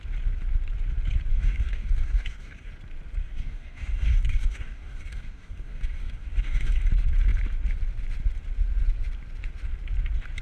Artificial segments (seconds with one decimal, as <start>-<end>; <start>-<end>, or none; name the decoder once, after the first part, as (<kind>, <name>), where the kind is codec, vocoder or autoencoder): 1.3-2.7 (codec, DAC); 3.2-6.8